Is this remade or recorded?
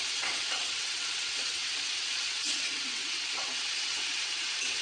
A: remade